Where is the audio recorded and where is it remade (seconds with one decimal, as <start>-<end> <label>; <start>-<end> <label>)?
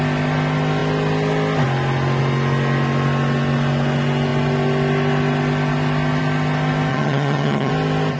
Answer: 0.0-6.9 recorded; 6.9-7.7 remade; 7.7-8.2 recorded